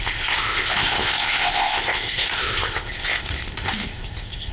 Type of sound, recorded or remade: remade